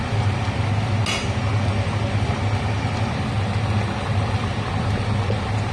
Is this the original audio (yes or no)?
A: yes